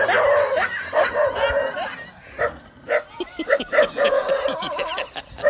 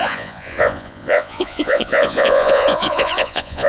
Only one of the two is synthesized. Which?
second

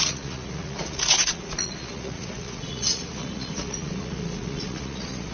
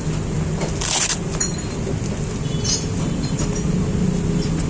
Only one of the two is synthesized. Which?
first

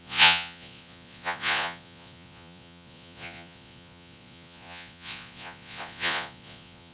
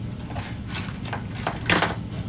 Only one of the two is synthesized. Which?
first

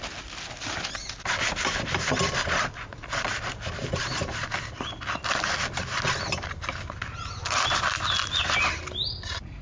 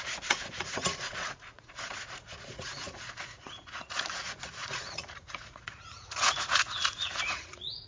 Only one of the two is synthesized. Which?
second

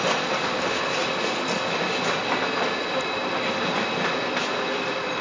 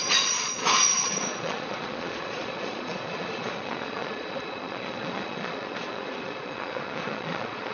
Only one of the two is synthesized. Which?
second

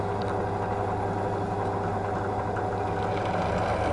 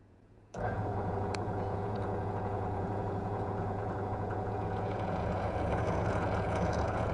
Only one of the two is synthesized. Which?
second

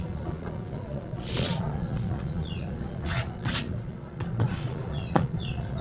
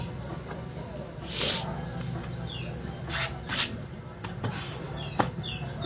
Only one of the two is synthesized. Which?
first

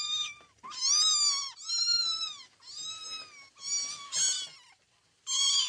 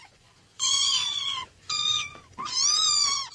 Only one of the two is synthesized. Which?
second